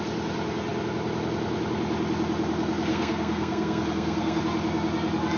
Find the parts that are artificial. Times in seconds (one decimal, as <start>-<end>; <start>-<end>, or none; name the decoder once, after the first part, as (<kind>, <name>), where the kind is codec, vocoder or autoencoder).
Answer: 2.9-4.4 (codec, SNAC)